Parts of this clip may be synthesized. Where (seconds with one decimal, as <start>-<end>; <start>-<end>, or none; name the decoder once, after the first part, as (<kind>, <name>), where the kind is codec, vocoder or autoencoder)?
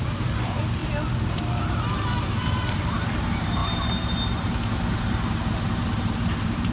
0.0-0.8 (vocoder, BigVGAN v2); 1.6-6.7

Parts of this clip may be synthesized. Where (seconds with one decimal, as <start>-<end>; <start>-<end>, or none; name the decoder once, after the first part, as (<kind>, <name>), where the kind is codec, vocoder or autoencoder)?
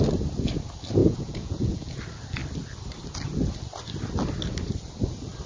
1.0-2.0 (vocoder, Vocos)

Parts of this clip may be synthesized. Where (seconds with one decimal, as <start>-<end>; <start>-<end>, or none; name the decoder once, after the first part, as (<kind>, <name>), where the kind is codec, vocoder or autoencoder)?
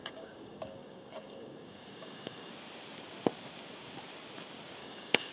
0.0-2.5 (codec, DAC); 4.8-5.3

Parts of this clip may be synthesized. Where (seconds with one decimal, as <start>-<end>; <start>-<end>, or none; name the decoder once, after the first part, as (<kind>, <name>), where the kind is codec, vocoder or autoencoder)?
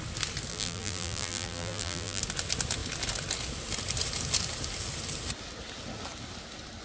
0.5-2.2 (vocoder, BigVGAN v2)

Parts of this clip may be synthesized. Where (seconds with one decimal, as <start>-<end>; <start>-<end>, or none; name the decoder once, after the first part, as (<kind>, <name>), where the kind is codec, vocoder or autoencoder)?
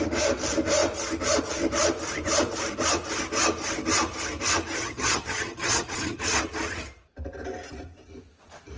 4.8-6.2 (vocoder, HiFi-GAN)